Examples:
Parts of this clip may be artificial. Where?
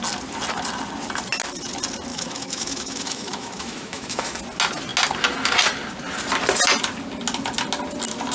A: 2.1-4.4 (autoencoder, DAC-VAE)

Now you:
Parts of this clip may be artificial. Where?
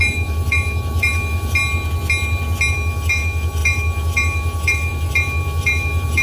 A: 0.0-1.6 (autoencoder, DAC-VAE); 2.7-6.2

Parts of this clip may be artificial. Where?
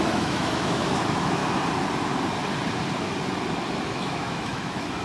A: 0.0-1.4 (autoencoder, DAC-VAE); 3.9-5.0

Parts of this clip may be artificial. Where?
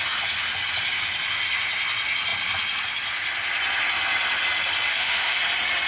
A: 4.9-5.4 (autoencoder, DAC-VAE)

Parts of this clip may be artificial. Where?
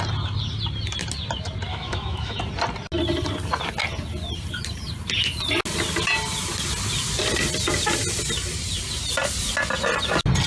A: 1.7-2.4 (autoencoder, DAC-VAE)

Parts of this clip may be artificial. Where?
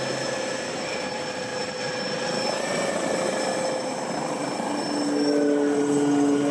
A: 3.5-4.1 (autoencoder, DAC-VAE)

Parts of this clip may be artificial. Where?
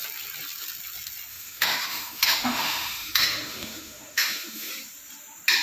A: 1.3-4.7 (autoencoder, DAC-VAE)